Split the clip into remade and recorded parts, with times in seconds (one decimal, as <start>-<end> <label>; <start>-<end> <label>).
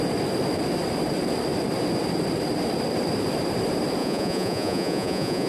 0.0-4.0 recorded; 4.0-5.5 remade